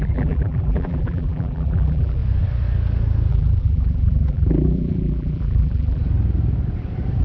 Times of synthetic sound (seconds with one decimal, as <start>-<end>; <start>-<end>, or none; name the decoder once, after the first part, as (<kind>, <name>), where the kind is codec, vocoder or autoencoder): 0.0-2.2 (vocoder, BigVGAN v2); 3.3-6.0